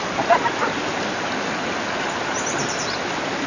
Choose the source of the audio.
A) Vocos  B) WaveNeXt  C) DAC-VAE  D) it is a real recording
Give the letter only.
D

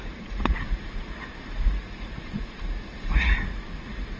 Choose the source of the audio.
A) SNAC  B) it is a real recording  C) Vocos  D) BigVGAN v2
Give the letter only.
C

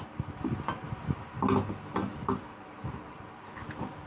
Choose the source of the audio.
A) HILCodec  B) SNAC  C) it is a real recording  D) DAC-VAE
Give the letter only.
C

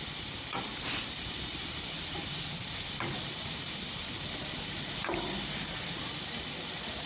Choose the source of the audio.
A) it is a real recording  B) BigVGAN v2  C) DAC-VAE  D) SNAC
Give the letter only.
B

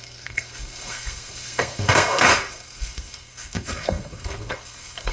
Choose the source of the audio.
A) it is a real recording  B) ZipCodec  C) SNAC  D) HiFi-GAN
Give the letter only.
C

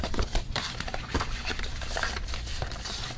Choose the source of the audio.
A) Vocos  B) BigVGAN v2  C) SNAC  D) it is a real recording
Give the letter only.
B